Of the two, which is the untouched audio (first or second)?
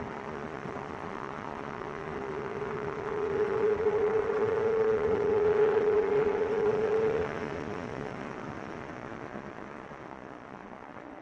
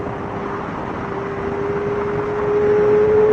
second